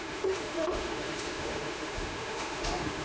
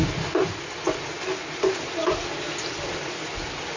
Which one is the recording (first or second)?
second